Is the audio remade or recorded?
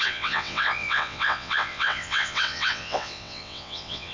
remade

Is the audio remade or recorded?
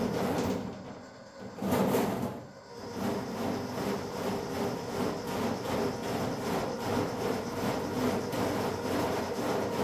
recorded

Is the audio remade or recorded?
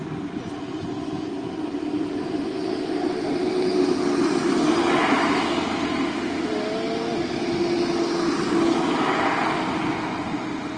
recorded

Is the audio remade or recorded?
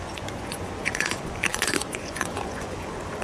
remade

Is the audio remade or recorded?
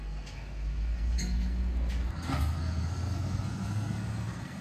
remade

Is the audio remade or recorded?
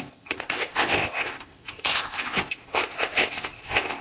remade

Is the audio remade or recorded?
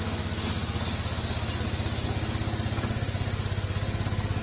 recorded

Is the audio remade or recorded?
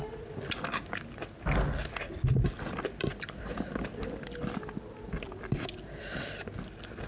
recorded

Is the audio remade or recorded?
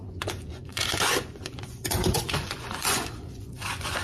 remade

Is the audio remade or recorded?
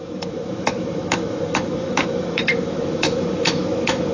remade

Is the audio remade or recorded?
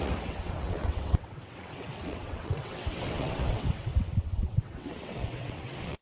remade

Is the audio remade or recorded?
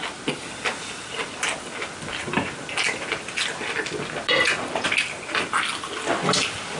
recorded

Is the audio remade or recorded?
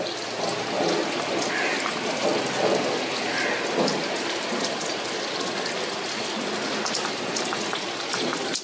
recorded